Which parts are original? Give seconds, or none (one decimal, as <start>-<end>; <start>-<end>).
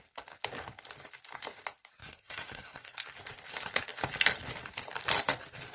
0.0-2.0; 3.1-5.7